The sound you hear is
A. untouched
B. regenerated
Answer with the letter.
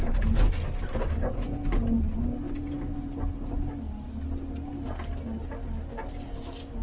A